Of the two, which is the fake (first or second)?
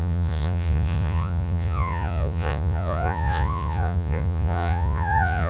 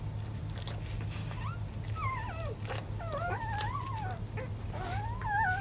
first